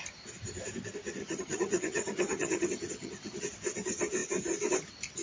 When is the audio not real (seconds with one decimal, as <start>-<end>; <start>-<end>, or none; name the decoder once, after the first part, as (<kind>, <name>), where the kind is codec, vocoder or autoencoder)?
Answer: 1.2-3.4 (vocoder, HiFi-GAN)